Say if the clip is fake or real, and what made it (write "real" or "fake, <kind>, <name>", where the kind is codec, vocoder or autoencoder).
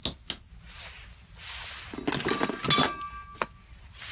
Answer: real